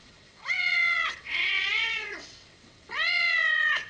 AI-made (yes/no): yes